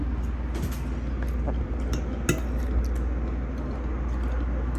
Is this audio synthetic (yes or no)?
no